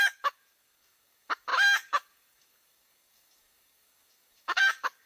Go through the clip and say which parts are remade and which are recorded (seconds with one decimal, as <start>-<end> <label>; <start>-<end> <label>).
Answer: 0.0-5.1 remade